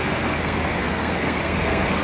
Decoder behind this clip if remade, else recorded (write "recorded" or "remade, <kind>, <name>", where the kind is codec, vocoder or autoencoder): remade, codec, SNAC